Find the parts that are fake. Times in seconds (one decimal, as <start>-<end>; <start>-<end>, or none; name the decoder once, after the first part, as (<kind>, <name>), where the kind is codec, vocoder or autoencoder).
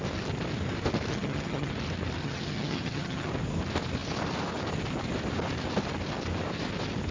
1.1-1.7 (vocoder, HiFi-GAN); 2.2-3.3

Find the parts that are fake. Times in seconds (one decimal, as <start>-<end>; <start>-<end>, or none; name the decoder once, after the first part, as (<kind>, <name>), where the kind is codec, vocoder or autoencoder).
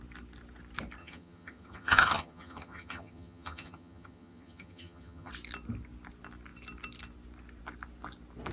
1.0-5.3 (vocoder, HiFi-GAN)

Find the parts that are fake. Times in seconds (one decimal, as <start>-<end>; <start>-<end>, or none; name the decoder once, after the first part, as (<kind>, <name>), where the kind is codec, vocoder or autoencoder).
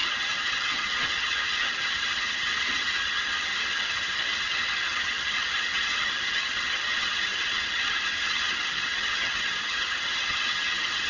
0.0-11.1 (vocoder, HiFi-GAN)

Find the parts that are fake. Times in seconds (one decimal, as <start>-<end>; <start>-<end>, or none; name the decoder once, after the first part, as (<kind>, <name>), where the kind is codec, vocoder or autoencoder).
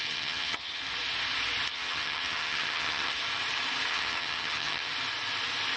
0.0-0.8 (vocoder, HiFi-GAN); 1.7-3.2; 3.9-4.9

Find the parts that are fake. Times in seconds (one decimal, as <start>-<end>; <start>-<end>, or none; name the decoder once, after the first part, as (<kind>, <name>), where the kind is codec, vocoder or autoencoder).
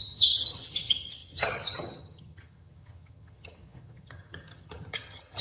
0.0-5.4 (vocoder, HiFi-GAN)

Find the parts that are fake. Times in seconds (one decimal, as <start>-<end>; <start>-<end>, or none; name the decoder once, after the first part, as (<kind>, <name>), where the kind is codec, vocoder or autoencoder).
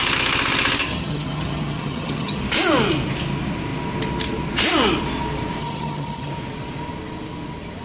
0.9-2.4 (vocoder, HiFi-GAN); 5.6-6.3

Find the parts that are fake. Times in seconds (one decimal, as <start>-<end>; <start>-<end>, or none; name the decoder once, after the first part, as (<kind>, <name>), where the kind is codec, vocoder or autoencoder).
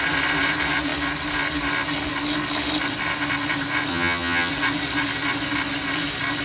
3.9-4.5 (vocoder, HiFi-GAN)